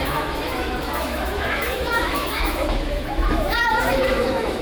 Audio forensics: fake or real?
fake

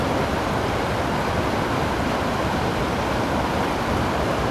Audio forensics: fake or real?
real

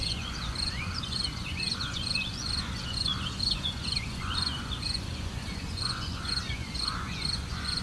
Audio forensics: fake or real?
fake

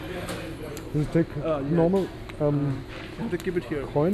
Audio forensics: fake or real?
real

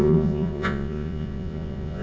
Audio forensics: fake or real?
fake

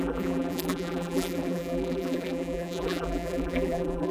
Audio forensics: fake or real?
fake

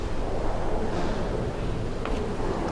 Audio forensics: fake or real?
real